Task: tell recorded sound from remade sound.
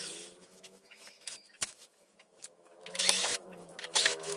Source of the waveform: remade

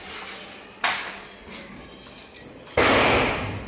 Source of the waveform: recorded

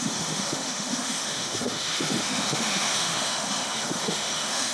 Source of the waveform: remade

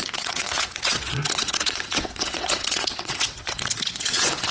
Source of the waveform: remade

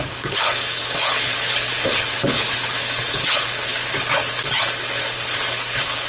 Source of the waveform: remade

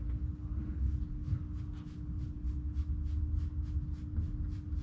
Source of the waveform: recorded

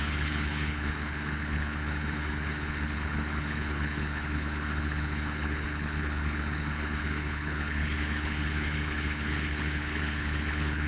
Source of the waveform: remade